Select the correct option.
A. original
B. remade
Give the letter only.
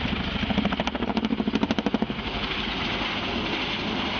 A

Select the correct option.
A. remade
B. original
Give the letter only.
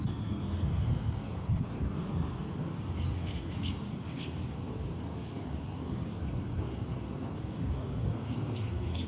A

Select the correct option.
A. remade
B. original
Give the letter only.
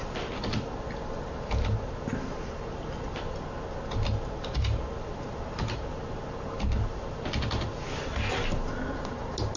B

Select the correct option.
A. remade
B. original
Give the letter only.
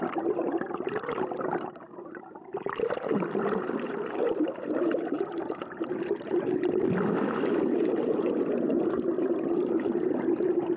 A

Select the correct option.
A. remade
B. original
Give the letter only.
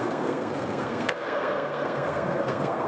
A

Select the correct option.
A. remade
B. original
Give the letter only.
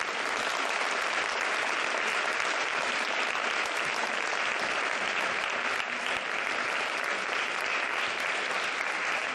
B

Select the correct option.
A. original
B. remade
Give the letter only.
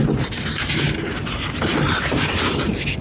A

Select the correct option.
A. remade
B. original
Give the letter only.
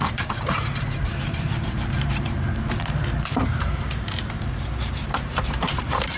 A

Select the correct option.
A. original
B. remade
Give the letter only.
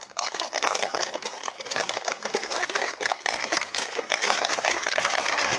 B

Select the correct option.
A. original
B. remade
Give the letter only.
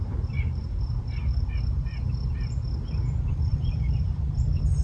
B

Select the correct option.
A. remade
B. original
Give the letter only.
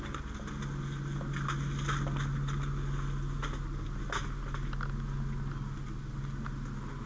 B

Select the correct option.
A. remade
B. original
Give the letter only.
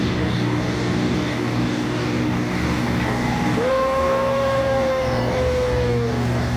A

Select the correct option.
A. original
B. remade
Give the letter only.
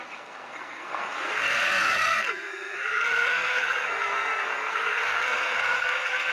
B